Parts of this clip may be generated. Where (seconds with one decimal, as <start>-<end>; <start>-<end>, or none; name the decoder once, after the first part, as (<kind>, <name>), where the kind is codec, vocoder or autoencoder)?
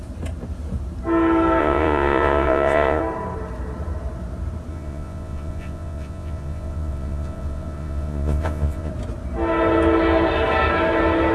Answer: 1.6-3.0 (vocoder, Vocos); 4.7-8.9